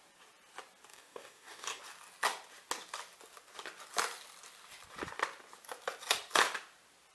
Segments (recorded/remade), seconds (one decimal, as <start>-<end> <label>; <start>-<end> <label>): 0.0-0.9 recorded; 0.9-1.8 remade; 1.8-7.1 recorded

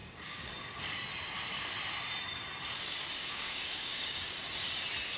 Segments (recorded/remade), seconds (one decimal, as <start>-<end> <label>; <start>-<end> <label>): 0.0-0.5 remade; 0.5-3.2 recorded; 3.2-4.3 remade; 4.3-5.2 recorded

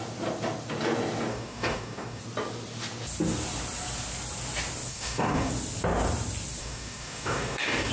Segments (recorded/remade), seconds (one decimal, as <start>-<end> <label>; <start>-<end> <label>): 0.0-1.3 recorded; 1.3-2.2 remade; 2.2-4.9 recorded; 4.9-5.5 remade; 5.5-6.6 recorded; 6.6-7.9 remade

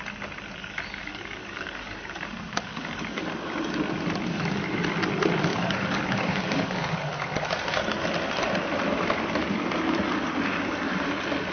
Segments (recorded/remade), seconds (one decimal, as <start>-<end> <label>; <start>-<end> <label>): 0.0-1.0 recorded; 1.0-3.2 remade; 3.2-5.5 recorded; 5.5-6.9 remade; 6.9-11.5 recorded

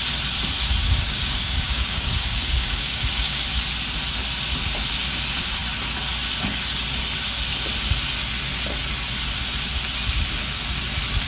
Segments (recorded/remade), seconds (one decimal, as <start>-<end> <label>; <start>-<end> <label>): 0.0-0.8 recorded; 0.8-3.4 remade; 3.4-11.3 recorded

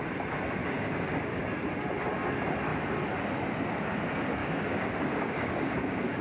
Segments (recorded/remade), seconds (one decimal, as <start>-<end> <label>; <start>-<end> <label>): 0.0-0.6 recorded; 0.6-1.4 remade; 1.4-4.4 recorded; 4.4-6.2 remade

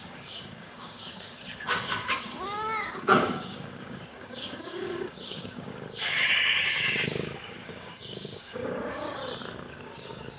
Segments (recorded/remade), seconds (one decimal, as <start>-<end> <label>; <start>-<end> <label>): 0.0-9.2 remade; 9.2-9.7 recorded; 9.7-10.4 remade

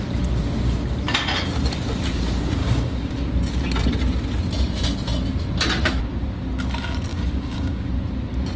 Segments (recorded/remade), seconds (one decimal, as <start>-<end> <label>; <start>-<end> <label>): 0.0-2.6 recorded; 2.6-3.3 remade; 3.3-7.1 recorded; 7.1-7.9 remade; 7.9-8.6 recorded